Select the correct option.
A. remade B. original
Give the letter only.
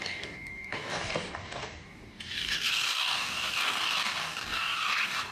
A